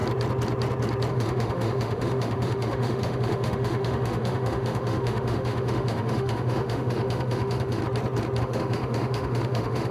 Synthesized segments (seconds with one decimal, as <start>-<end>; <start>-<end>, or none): 1.1-7.8; 8.4-9.9